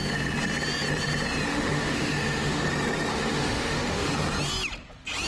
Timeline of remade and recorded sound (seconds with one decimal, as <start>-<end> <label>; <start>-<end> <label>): 0.0-1.5 recorded; 1.5-2.7 remade; 2.7-3.1 recorded; 3.1-4.1 remade; 4.1-5.3 recorded